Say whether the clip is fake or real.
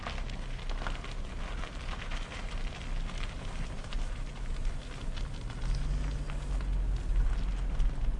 real